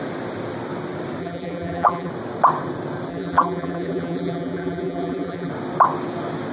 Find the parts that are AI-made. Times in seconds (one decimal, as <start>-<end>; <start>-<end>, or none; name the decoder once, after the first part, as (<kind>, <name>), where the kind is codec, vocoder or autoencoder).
1.2-2.1 (vocoder, BigVGAN v2); 3.1-5.5